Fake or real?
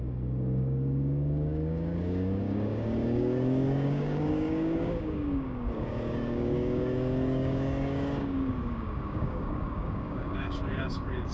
fake